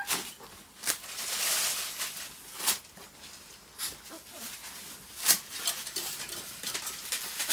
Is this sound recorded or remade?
recorded